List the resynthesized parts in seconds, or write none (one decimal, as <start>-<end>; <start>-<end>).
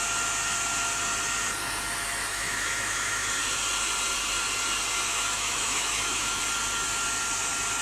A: 2.3-3.3; 5.1-6.4